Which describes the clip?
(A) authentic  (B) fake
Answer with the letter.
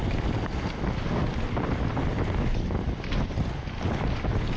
A